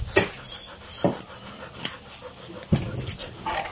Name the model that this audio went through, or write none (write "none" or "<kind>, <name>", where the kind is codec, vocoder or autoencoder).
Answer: none